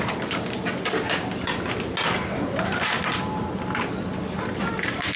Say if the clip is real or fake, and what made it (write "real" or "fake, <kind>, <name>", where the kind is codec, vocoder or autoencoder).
real